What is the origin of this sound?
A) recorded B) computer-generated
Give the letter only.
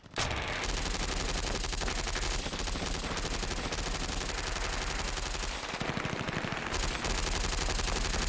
A